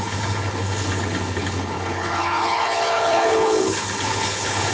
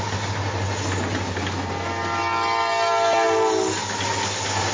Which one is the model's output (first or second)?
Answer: first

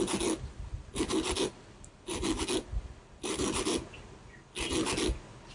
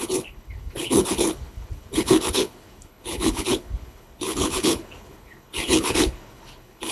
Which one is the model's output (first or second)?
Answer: second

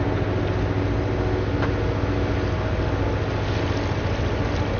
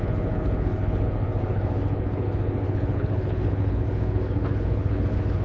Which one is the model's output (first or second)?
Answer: second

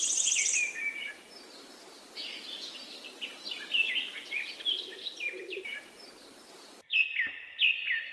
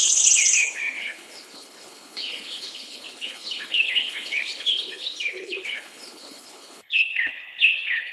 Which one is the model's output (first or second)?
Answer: second